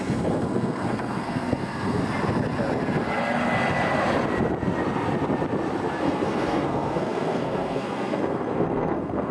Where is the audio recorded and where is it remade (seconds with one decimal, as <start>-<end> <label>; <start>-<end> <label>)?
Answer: 0.0-2.0 remade; 2.0-6.0 recorded; 6.0-9.3 remade